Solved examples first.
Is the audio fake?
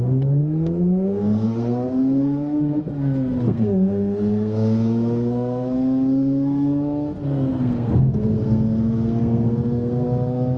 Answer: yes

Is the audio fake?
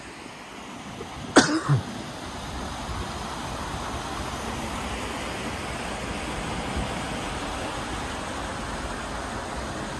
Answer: no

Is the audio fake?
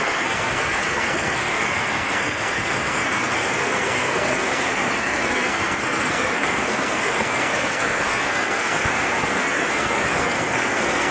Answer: yes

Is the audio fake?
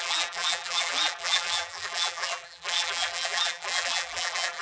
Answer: yes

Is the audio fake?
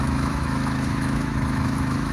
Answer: yes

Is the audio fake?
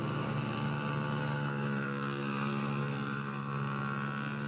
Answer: no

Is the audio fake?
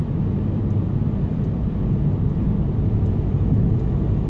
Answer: no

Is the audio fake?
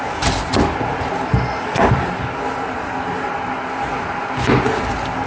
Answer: no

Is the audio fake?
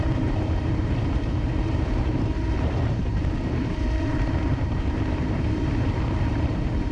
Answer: yes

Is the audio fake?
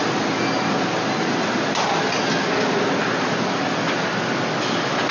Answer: no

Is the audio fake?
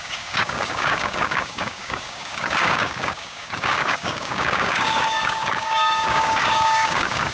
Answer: yes